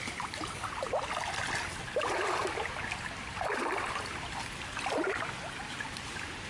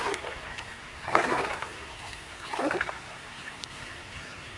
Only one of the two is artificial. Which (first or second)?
second